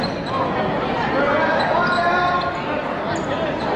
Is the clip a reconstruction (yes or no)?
no